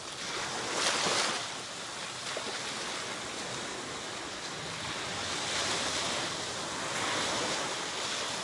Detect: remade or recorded recorded